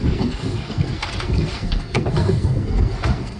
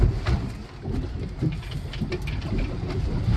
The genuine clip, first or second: second